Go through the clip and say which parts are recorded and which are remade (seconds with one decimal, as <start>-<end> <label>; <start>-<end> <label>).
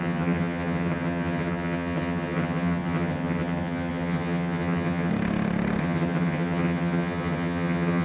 0.0-5.1 remade; 5.1-5.8 recorded; 5.8-8.0 remade